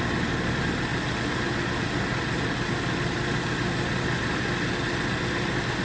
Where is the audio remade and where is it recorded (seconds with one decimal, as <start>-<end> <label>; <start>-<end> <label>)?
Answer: 0.0-5.8 recorded